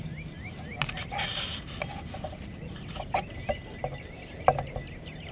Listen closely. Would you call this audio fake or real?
real